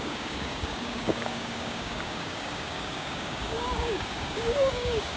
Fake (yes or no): yes